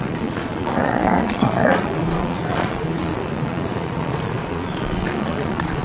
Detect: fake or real fake